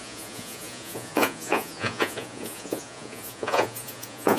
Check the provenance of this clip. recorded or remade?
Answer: remade